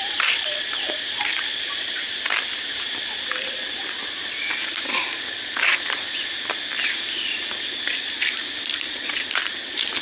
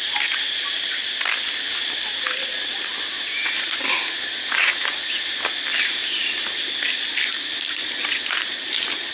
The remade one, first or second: first